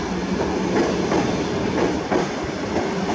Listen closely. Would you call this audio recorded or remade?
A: recorded